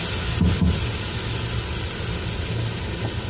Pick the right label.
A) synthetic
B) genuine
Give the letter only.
B